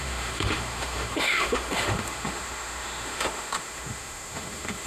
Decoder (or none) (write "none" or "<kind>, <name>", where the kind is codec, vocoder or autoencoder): autoencoder, DAC-VAE